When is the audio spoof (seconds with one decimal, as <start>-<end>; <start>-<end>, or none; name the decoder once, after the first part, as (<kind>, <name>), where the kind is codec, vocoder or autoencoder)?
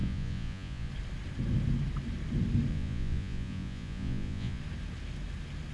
0.0-0.9 (vocoder, Vocos); 2.7-4.6